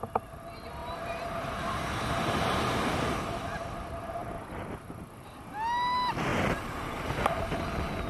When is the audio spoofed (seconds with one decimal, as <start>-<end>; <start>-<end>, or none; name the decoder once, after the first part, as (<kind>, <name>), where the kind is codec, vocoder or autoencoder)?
0.8-1.7 (vocoder, BigVGAN v2)